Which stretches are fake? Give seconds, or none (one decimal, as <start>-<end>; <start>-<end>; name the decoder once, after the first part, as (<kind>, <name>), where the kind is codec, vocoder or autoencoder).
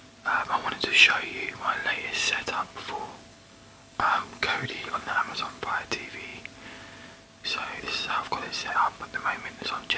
3.3-5.6 (codec, DAC)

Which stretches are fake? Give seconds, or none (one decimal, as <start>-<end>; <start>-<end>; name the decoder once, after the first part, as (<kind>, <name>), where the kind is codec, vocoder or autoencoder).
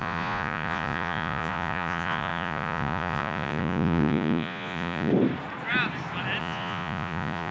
0.0-5.1 (vocoder, Vocos); 6.4-7.5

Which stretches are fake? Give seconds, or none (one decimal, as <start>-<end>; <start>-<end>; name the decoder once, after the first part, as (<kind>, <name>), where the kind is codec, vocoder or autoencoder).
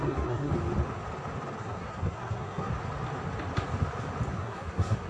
0.0-0.5 (codec, SNAC); 1.6-2.7; 4.3-5.1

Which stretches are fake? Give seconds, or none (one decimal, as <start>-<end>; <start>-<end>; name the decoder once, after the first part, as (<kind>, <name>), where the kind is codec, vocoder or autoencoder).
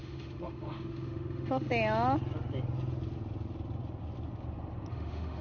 0.0-1.7 (autoencoder, DAC-VAE); 4.9-5.4